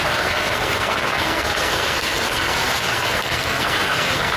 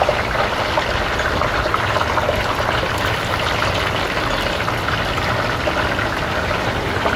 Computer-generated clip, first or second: first